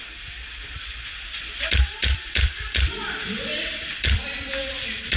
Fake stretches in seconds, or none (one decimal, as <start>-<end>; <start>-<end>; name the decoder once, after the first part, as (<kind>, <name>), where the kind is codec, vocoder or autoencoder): 2.0-5.2 (vocoder, BigVGAN v2)